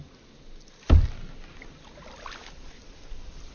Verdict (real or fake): real